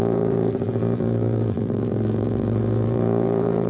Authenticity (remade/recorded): remade